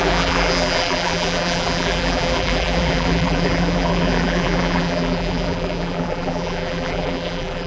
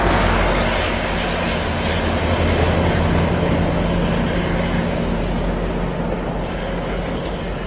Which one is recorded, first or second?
second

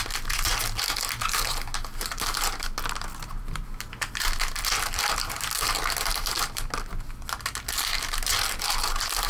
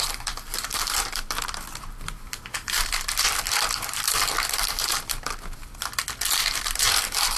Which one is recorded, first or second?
first